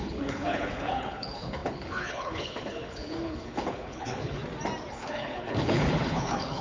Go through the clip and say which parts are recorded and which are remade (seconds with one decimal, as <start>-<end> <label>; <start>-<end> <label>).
0.0-4.4 remade; 4.4-4.9 recorded; 4.9-6.6 remade